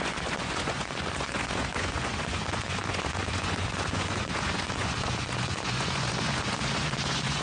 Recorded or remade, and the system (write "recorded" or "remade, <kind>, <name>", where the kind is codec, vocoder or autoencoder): remade, vocoder, Vocos